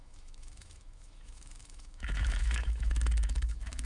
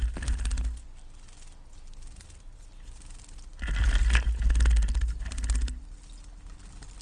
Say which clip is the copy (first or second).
first